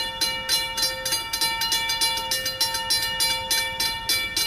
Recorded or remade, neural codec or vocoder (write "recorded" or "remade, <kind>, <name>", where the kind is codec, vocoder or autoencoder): recorded